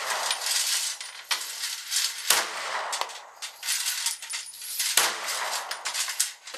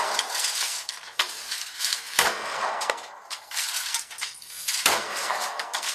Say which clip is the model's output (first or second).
second